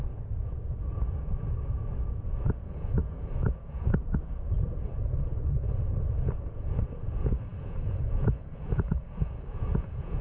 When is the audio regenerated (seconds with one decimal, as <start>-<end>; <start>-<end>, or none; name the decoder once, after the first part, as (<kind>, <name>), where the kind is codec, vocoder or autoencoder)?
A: 0.0-10.2 (vocoder, Vocos)